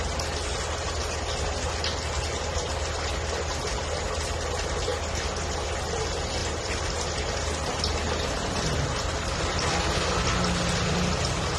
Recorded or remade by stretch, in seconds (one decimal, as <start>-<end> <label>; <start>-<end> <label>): 0.0-6.4 recorded; 6.4-6.9 remade; 6.9-11.6 recorded